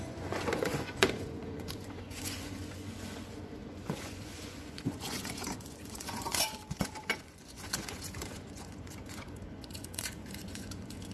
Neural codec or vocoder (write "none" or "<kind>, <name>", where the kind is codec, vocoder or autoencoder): vocoder, Vocos